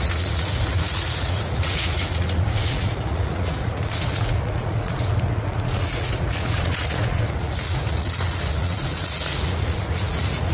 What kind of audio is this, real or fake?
fake